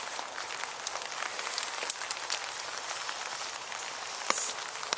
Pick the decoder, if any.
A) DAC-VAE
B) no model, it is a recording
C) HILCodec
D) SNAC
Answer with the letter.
B